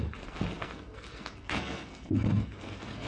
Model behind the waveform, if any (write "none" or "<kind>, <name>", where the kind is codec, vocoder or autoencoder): codec, SNAC